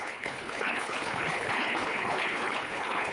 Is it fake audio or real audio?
fake